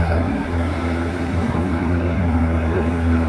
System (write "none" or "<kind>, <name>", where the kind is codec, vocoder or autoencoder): codec, SNAC